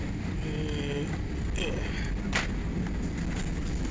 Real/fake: real